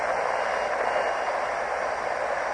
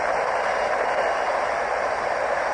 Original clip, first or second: first